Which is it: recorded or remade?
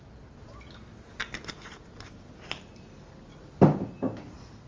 recorded